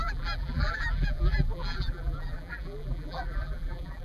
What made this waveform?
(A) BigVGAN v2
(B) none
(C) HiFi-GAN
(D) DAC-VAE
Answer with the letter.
A